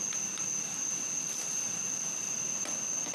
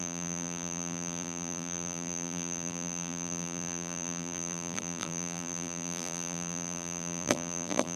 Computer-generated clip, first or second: second